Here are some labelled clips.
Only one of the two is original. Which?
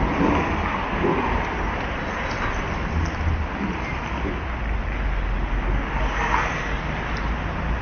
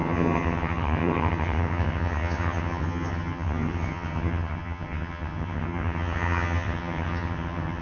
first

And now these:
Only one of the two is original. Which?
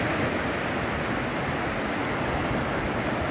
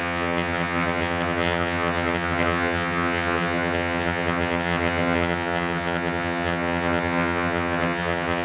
first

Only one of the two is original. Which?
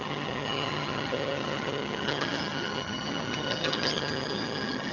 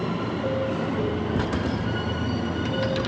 second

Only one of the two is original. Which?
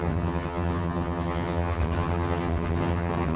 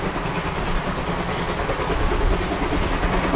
second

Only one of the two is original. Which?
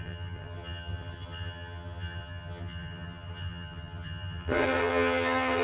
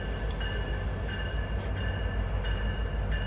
second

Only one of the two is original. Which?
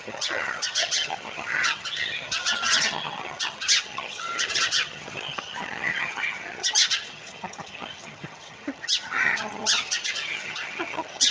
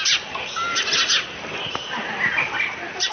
second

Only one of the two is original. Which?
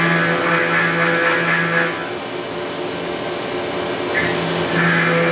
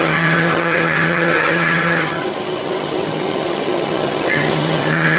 first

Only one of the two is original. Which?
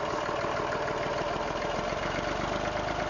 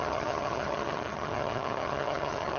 first